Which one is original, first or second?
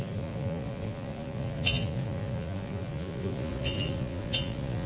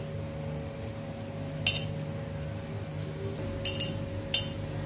second